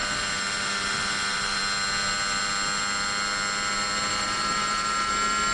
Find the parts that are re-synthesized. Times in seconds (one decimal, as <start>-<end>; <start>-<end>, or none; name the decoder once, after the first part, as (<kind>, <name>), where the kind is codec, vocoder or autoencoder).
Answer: 0.0-1.6 (vocoder, BigVGAN v2); 4.1-5.1

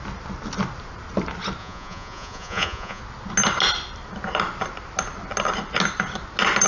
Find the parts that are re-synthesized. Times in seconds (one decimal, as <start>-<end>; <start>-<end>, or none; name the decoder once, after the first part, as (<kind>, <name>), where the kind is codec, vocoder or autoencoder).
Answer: 1.6-3.0 (vocoder, Vocos)

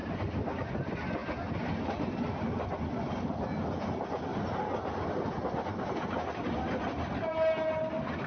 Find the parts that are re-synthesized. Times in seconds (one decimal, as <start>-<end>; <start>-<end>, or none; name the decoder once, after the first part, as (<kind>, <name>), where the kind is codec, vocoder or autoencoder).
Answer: none